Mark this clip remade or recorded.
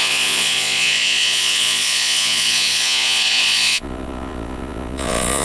remade